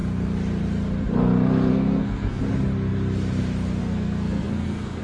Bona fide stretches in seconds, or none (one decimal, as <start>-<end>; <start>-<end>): 0.0-1.7; 2.4-3.8